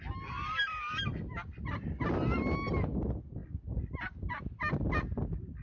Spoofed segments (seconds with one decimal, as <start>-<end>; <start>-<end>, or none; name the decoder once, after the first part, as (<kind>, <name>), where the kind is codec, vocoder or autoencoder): none